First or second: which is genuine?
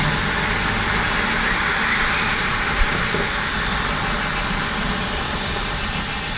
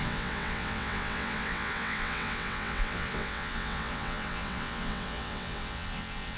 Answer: first